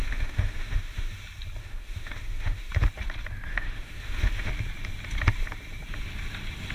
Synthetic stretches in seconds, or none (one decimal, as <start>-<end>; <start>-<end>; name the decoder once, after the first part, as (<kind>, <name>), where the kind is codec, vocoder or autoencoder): 0.0-1.2 (autoencoder, DAC-VAE); 1.6-2.7; 3.5-4.5